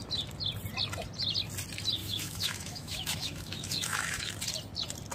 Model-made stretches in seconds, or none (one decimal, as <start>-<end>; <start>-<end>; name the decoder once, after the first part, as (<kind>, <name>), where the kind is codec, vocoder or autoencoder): 2.0-4.3 (autoencoder, DAC-VAE)